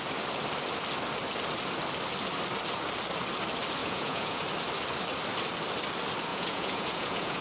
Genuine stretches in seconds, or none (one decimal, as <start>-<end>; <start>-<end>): 0.0-3.8; 4.4-6.3